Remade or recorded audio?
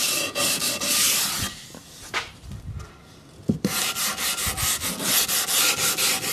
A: recorded